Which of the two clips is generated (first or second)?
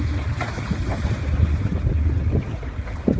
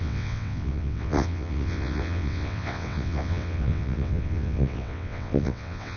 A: second